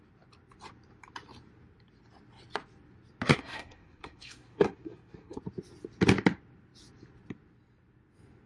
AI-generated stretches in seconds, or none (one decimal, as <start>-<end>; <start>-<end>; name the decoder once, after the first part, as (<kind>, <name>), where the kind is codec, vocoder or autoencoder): 3.3-5.4 (codec, SNAC)

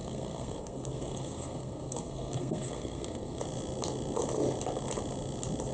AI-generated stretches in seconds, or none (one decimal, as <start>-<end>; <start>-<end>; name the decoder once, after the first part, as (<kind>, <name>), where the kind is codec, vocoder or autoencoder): 0.0-3.4 (codec, SNAC)